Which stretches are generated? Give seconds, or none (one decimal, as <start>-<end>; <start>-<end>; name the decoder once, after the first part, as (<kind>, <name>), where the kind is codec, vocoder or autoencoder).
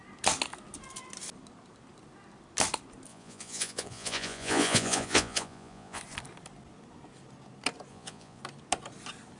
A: 3.1-6.0 (vocoder, Vocos); 7.9-8.4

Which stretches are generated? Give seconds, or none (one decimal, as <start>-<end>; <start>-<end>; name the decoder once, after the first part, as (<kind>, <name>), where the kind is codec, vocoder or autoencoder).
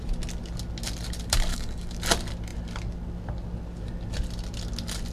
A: 1.5-2.0 (codec, DAC)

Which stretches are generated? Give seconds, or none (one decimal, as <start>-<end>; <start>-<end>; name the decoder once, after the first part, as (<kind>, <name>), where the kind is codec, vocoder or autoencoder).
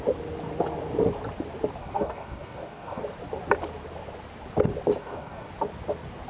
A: 1.8-3.0 (codec, DAC); 5.0-5.5